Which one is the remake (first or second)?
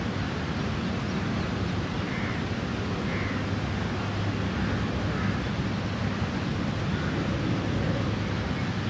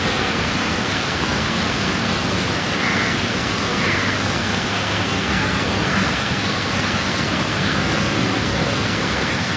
second